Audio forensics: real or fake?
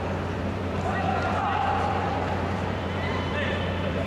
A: fake